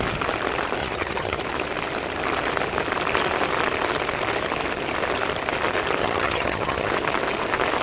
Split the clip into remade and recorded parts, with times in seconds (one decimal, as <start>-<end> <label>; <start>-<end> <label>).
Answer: 0.0-0.8 recorded; 0.8-1.4 remade; 1.4-6.0 recorded; 6.0-6.9 remade; 6.9-7.8 recorded